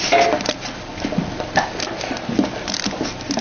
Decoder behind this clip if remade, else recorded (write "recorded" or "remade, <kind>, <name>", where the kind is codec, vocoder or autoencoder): recorded